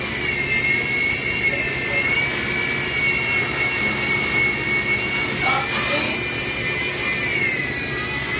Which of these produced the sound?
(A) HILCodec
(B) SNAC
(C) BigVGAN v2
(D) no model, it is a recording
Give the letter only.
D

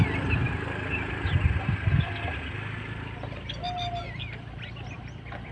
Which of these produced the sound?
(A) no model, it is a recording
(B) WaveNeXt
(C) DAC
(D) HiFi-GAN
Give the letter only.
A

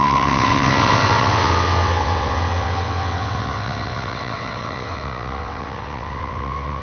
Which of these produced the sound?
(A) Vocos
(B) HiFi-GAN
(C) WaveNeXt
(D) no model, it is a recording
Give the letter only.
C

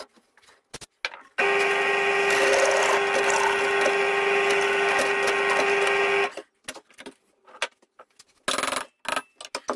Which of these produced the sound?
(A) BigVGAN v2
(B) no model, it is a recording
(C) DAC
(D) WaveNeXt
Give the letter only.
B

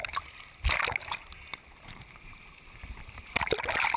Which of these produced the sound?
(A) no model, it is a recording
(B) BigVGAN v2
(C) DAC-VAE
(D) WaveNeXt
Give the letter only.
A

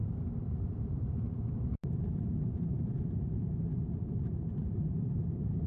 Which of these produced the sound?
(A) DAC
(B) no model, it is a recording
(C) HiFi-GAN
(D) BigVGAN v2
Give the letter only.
D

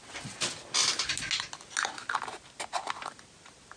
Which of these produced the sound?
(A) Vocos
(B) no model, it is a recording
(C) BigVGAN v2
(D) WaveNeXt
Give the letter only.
B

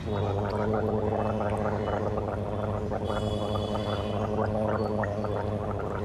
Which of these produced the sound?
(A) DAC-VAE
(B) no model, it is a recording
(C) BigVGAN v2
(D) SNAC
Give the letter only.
B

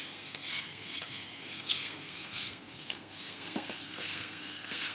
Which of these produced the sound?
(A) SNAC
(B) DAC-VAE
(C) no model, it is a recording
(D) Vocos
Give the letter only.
A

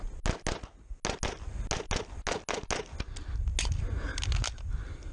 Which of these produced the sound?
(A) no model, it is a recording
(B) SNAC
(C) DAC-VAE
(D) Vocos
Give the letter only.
A